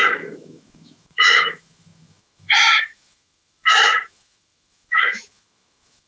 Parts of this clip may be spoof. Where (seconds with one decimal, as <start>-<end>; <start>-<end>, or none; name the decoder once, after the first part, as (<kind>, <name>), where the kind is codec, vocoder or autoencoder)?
0.0-6.1 (autoencoder, DAC-VAE)